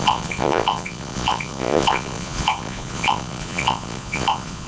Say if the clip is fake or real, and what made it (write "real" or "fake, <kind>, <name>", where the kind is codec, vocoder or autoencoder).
fake, vocoder, Vocos